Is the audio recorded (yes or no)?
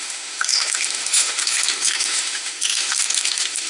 no